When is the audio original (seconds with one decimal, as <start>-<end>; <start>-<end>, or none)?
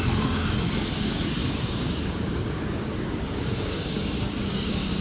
none